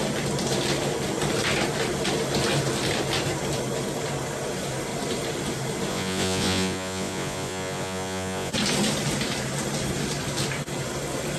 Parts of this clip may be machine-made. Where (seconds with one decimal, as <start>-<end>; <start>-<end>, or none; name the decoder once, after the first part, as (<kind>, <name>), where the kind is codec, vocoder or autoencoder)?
5.9-8.5 (vocoder, Vocos)

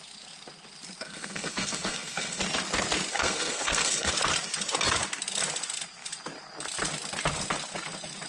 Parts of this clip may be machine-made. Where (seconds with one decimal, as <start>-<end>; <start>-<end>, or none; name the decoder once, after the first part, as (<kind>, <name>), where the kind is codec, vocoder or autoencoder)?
1.0-2.4 (codec, SNAC); 3.1-4.1

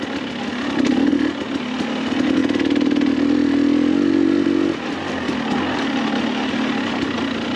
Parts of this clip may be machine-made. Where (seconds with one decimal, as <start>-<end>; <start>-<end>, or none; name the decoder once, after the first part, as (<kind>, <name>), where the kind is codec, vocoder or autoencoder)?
none

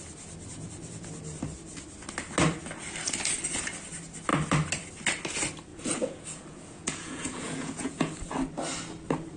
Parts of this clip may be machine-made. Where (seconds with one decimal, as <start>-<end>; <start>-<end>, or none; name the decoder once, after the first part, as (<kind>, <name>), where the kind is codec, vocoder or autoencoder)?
5.7-8.3 (vocoder, Vocos)

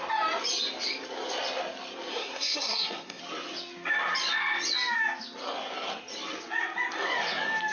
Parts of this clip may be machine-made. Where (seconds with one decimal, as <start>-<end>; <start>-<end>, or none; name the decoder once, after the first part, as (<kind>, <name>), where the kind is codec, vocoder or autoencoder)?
2.1-3.2 (codec, SNAC)